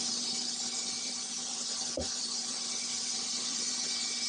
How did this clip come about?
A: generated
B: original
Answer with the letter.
A